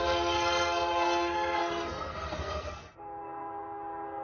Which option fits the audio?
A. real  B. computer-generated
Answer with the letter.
B